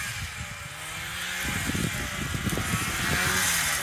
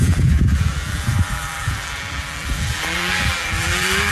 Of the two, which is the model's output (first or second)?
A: second